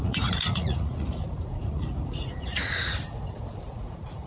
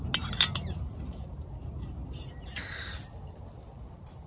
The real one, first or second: second